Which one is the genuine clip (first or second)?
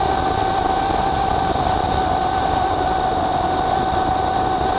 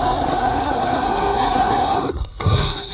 first